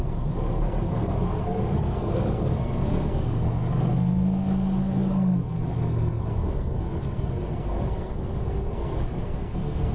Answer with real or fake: fake